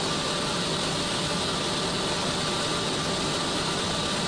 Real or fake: real